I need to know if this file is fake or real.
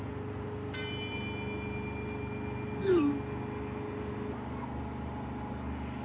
real